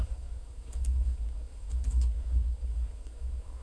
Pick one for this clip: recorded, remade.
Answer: remade